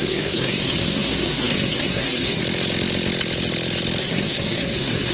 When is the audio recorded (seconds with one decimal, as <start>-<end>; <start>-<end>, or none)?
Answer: 2.4-4.0